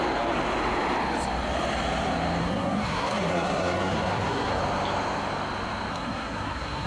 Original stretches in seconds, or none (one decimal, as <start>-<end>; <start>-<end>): 0.0-2.4; 4.6-5.9